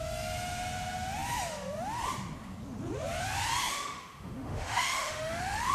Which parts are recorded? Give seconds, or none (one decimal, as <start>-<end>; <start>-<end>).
0.0-3.6